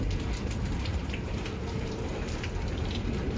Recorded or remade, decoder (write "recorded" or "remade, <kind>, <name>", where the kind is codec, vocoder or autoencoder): remade, vocoder, BigVGAN v2